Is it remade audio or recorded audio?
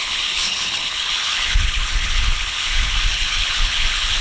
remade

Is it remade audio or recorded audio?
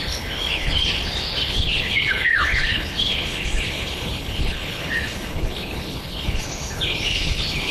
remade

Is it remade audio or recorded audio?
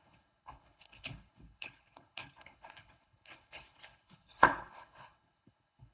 remade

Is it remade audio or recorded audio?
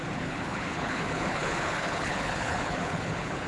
remade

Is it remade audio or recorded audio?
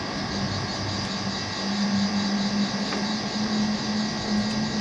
recorded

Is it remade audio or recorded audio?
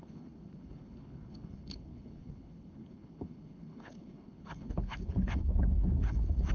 remade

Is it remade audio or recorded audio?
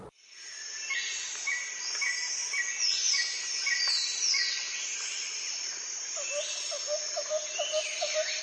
recorded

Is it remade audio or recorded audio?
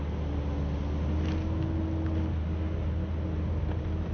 recorded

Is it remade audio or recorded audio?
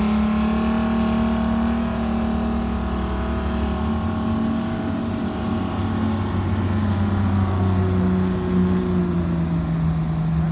recorded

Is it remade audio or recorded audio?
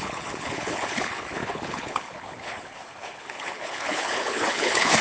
remade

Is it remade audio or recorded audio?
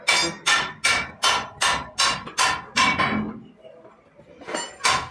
recorded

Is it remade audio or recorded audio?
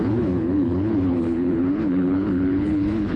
remade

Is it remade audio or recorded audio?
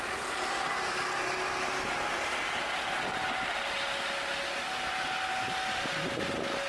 recorded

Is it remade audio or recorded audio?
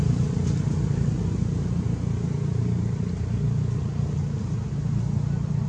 recorded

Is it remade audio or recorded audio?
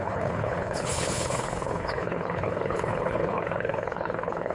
remade